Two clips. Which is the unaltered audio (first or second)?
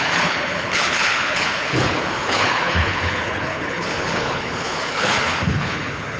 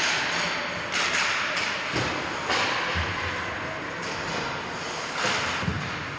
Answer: second